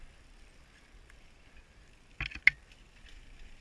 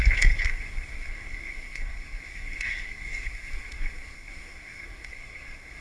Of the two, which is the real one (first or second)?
first